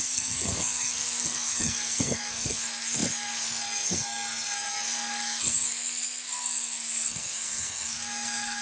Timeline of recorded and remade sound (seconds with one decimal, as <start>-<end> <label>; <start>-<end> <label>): 0.0-8.6 remade